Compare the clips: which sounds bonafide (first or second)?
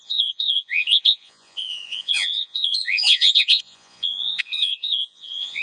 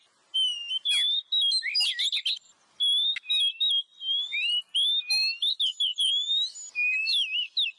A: second